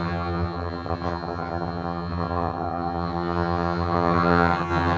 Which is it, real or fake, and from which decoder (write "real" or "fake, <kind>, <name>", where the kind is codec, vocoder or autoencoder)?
fake, vocoder, HiFi-GAN